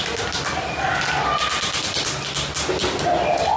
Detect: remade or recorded recorded